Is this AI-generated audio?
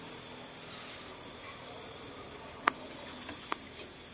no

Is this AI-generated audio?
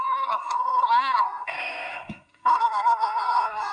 yes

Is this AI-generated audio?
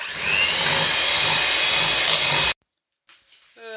no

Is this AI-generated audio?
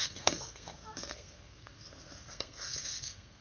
yes